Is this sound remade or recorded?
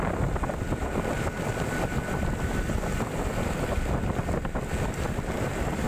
remade